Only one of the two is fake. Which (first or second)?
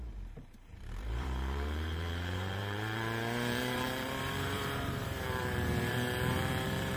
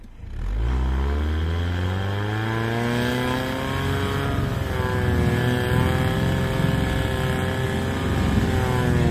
first